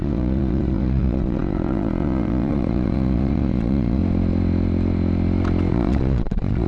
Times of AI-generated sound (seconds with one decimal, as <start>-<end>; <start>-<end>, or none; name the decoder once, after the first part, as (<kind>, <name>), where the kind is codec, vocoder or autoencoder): 0.0-4.0 (vocoder, Vocos); 5.7-6.7